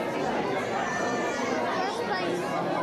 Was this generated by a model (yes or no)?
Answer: no